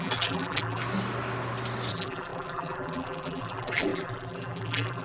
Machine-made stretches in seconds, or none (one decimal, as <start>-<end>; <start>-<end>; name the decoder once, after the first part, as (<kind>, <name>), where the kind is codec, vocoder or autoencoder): 0.0-0.8 (vocoder, BigVGAN v2); 1.9-5.0